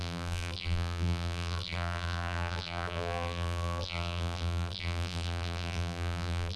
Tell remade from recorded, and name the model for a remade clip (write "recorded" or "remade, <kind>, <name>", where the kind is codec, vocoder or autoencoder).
remade, vocoder, BigVGAN v2